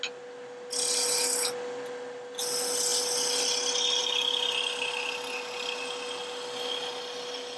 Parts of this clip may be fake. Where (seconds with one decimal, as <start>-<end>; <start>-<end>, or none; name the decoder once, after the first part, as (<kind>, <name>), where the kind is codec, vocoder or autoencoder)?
none